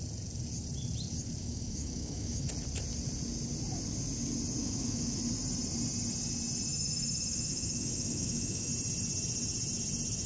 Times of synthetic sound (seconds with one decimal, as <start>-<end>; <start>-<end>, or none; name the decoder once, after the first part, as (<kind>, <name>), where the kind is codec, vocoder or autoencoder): 1.4-2.5 (autoencoder, DAC-VAE); 4.6-5.2; 6.7-8.7